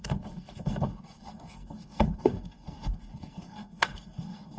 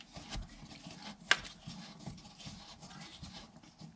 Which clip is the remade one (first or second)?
first